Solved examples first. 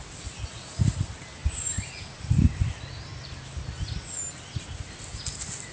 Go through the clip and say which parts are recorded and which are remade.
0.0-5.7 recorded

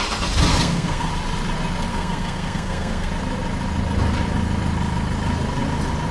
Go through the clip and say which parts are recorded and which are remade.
0.0-0.5 recorded; 0.5-1.1 remade; 1.1-1.9 recorded; 1.9-3.1 remade; 3.1-6.1 recorded

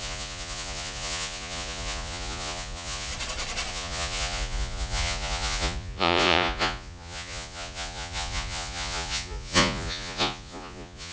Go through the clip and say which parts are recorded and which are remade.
0.0-3.1 remade; 3.1-3.7 recorded; 3.7-11.1 remade

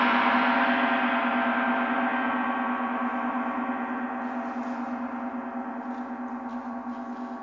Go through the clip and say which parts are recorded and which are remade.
0.0-7.4 recorded

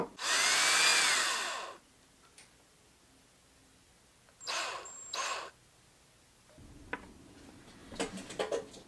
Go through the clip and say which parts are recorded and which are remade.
0.0-8.9 recorded

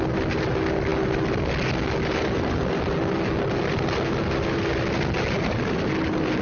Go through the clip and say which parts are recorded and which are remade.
0.0-6.4 recorded

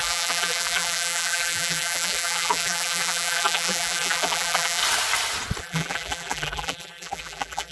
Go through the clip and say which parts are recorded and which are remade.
0.0-4.8 remade; 4.8-5.6 recorded; 5.6-7.7 remade

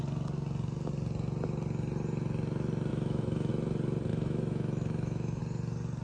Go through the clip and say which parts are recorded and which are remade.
0.0-2.9 recorded; 2.9-3.5 remade; 3.5-4.1 recorded; 4.1-5.4 remade; 5.4-6.0 recorded